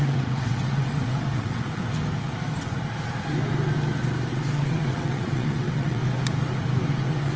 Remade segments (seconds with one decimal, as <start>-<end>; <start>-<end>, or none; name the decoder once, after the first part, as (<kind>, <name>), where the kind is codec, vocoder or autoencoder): 0.0-1.8 (vocoder, WaveNeXt); 4.3-6.0; 6.9-7.4